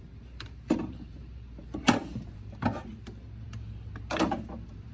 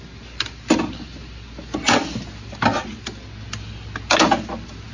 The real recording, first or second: second